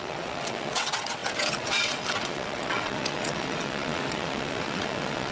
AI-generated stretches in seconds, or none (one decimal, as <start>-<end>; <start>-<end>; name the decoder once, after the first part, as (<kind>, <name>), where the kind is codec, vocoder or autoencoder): 0.0-5.3 (vocoder, WaveNeXt)